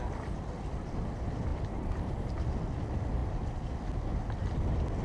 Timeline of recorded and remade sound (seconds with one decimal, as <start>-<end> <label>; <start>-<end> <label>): 0.0-1.5 recorded; 1.5-2.4 remade; 2.4-5.0 recorded